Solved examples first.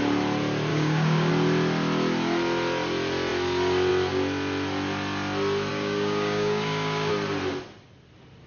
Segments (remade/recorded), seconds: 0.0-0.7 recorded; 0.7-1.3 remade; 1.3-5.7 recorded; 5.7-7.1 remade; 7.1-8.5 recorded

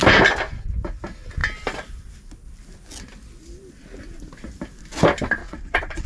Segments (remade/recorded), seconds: 0.0-5.4 recorded; 5.4-6.1 remade

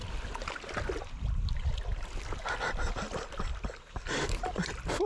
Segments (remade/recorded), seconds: 0.0-5.1 recorded

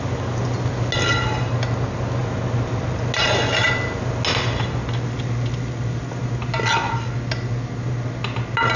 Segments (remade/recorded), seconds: 0.0-8.8 recorded

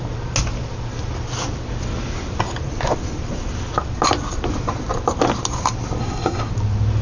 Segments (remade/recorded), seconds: 0.0-6.0 recorded; 6.0-6.5 remade; 6.5-7.0 recorded